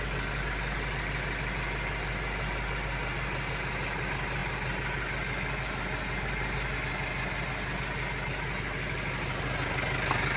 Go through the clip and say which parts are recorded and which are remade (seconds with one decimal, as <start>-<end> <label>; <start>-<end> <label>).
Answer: 0.0-10.4 recorded